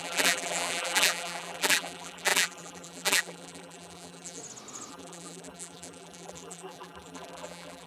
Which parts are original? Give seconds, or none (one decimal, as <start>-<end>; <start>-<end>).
4.4-4.9